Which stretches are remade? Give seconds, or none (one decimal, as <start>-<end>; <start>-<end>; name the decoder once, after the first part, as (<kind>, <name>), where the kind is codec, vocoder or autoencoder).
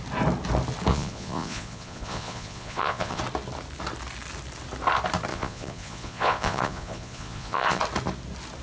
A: 0.9-3.2 (vocoder, Vocos); 5.3-7.8